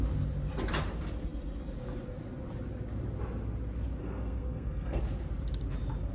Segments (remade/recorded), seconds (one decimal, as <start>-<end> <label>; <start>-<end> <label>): 0.0-4.0 recorded; 4.0-5.0 remade; 5.0-6.1 recorded

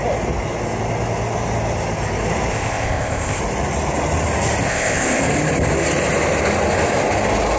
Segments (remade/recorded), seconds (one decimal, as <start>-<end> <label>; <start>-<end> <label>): 0.0-2.5 recorded; 2.5-3.4 remade; 3.4-4.7 recorded; 4.7-5.2 remade; 5.2-7.6 recorded

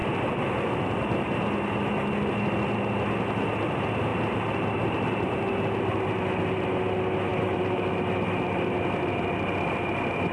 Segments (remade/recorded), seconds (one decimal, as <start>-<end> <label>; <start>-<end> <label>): 0.0-4.1 recorded; 4.1-5.5 remade; 5.5-7.3 recorded; 7.3-8.0 remade; 8.0-10.3 recorded